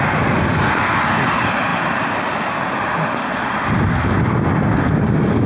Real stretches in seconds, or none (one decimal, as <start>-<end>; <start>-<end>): 0.0-5.5